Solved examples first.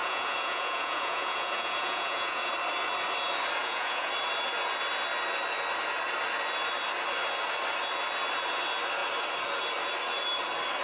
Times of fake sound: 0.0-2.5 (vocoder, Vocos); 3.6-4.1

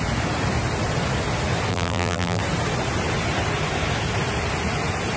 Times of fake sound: 1.7-2.4 (vocoder, BigVGAN v2)

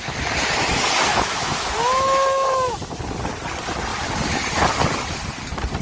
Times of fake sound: 1.1-2.7 (autoencoder, DAC-VAE)

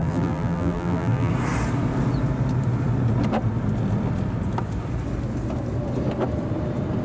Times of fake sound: 0.0-1.3 (vocoder, BigVGAN v2)